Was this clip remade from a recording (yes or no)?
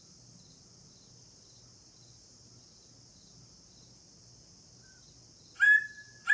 no